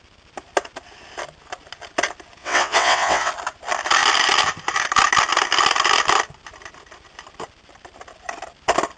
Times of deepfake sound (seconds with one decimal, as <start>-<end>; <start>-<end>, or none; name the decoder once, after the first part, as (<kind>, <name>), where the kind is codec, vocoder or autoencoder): 2.4-3.3 (vocoder, WaveNeXt)